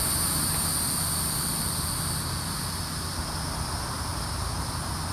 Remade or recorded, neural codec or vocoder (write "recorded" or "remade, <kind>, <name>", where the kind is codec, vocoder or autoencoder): recorded